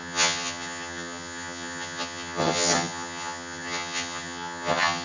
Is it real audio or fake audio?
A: fake